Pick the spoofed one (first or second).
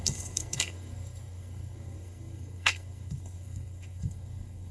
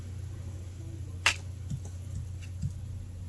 first